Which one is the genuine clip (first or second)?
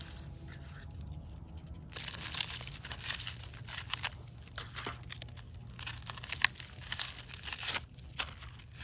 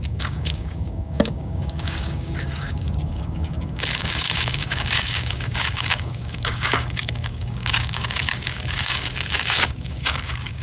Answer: first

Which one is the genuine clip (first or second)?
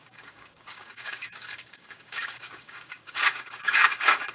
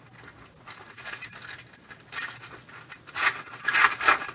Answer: second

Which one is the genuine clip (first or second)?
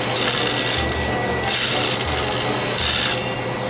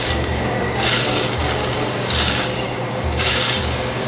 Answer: first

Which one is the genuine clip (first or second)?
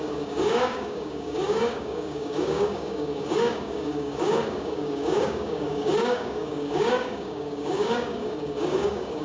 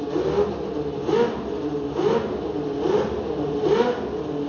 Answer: second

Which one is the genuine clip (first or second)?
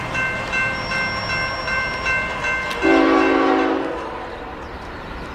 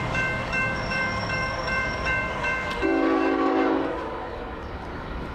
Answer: first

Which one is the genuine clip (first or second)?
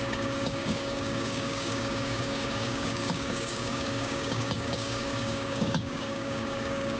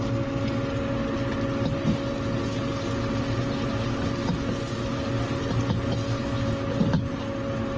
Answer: second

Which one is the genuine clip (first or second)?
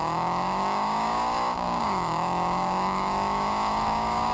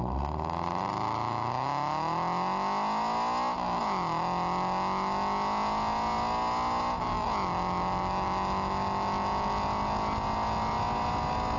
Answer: second